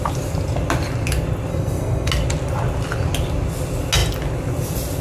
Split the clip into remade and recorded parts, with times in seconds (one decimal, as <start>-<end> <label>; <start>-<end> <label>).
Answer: 0.0-1.5 recorded; 1.5-2.1 remade; 2.1-5.0 recorded